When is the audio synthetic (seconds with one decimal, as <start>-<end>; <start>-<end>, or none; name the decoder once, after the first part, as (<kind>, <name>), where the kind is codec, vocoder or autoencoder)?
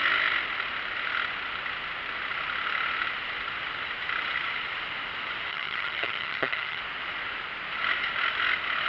5.5-6.8 (vocoder, HiFi-GAN)